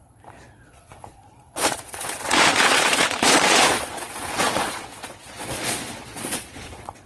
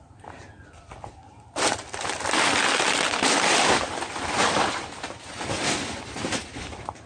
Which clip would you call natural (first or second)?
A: second